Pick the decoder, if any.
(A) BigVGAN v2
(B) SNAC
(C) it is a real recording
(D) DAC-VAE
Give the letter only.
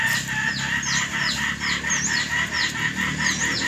C